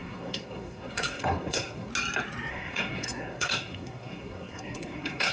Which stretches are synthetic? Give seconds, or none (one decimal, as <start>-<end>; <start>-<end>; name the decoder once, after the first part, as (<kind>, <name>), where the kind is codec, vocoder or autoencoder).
0.0-1.9 (codec, SNAC); 2.5-5.3